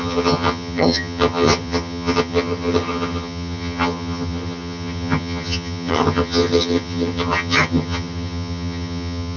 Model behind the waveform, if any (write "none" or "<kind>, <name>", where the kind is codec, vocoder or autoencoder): vocoder, HiFi-GAN